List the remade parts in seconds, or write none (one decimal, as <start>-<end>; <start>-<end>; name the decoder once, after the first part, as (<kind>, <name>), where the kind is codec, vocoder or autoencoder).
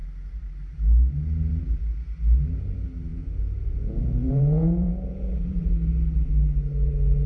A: 3.1-5.7 (vocoder, Vocos)